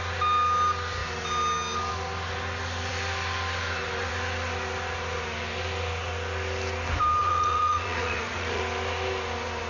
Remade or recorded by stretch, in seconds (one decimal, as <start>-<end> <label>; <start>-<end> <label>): 0.0-7.2 recorded; 7.2-8.6 remade; 8.6-9.7 recorded